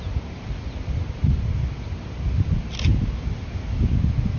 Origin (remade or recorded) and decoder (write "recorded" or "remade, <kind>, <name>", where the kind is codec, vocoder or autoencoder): recorded